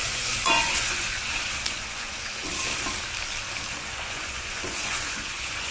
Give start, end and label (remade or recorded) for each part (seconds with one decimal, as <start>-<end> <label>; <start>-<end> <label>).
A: 0.0-2.5 remade; 2.5-3.7 recorded; 3.7-5.7 remade